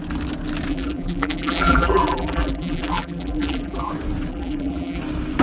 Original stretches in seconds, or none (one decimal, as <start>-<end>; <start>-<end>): 0.0-0.7; 3.9-4.3; 5.0-5.4